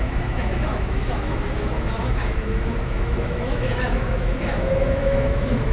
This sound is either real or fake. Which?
fake